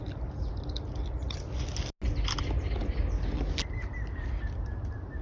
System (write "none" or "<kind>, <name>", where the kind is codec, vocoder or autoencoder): none